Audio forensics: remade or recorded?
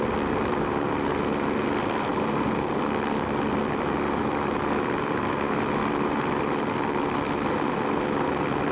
recorded